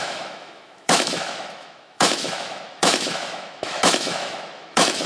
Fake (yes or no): yes